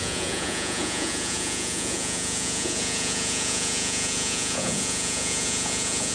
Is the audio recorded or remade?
remade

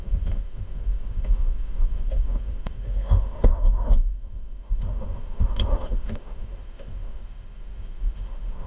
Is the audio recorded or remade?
remade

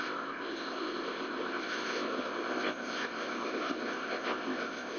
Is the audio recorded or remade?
remade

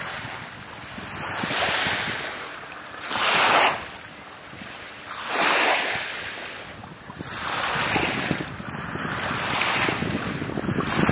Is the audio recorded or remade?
recorded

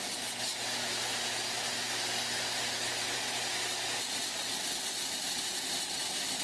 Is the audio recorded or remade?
recorded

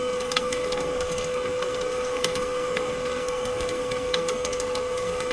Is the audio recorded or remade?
remade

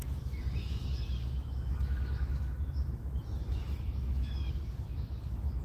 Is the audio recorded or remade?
remade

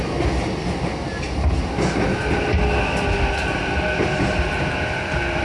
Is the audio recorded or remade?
recorded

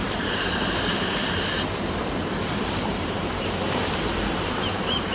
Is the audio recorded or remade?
remade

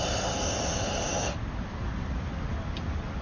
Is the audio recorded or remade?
recorded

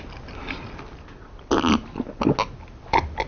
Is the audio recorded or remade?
recorded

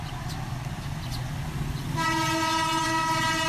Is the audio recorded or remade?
recorded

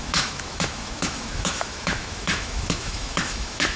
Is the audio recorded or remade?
remade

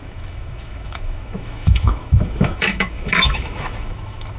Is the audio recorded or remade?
remade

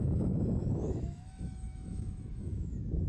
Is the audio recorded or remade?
remade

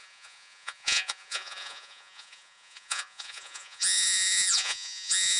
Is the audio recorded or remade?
remade